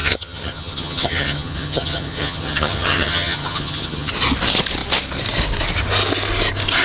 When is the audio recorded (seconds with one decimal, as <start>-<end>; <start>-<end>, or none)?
4.1-6.8